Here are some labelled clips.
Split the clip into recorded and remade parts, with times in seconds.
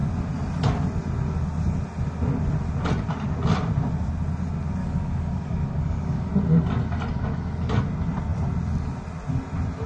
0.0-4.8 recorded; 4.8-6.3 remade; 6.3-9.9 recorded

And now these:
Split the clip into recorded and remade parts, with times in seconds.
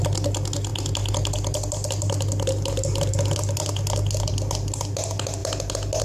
0.0-6.0 recorded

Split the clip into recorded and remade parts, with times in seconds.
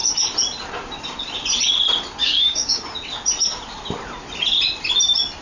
0.0-2.2 recorded; 2.2-2.8 remade; 2.8-5.4 recorded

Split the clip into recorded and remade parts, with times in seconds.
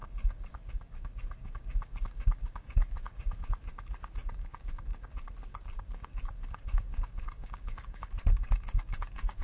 0.0-3.4 remade; 3.4-4.2 recorded; 4.2-5.1 remade; 5.1-5.5 recorded; 5.5-9.4 remade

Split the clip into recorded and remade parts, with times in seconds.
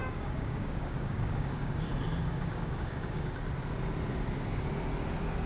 0.0-3.3 remade; 3.3-5.5 recorded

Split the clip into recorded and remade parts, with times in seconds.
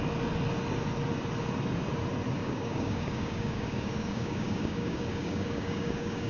0.0-2.4 recorded; 2.4-6.3 remade